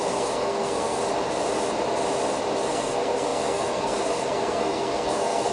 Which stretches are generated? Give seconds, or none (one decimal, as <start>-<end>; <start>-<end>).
0.0-1.0; 2.6-5.5